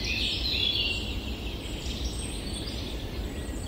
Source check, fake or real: real